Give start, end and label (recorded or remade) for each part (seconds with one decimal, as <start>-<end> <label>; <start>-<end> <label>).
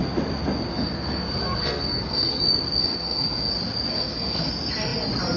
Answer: 0.0-0.7 recorded; 0.7-2.4 remade; 2.4-2.8 recorded; 2.8-3.5 remade; 3.5-3.9 recorded; 3.9-4.5 remade; 4.5-5.4 recorded